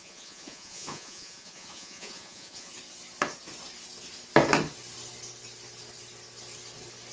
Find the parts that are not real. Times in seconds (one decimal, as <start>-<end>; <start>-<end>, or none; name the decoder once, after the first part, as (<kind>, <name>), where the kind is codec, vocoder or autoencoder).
0.0-2.7 (vocoder, Vocos)